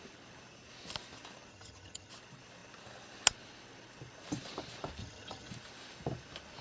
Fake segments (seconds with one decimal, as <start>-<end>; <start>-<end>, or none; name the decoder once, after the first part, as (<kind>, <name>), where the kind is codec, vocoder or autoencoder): 1.5-2.1 (vocoder, HiFi-GAN); 5.0-5.5